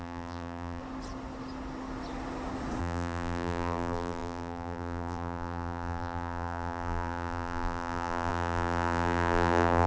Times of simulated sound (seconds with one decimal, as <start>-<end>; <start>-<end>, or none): 0.0-0.8; 2.8-9.9